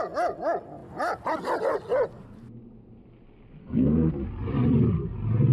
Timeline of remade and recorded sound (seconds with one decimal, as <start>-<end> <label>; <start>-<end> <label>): 0.0-3.6 recorded; 3.6-4.1 remade; 4.1-5.5 recorded